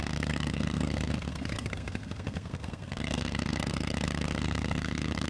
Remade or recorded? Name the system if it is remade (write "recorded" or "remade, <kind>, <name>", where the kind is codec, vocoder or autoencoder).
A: remade, codec, SNAC